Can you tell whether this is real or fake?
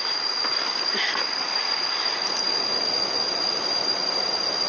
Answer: fake